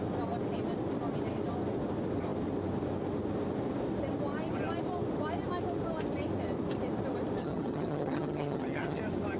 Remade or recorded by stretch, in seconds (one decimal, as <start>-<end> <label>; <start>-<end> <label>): 0.0-7.4 recorded; 7.4-9.0 remade; 9.0-9.4 recorded